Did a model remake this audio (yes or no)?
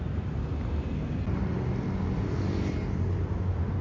no